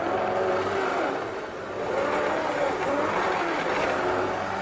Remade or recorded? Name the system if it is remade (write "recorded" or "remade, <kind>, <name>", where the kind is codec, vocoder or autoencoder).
recorded